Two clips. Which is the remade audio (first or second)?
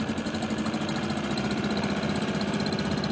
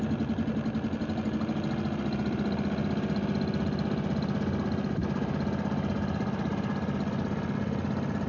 first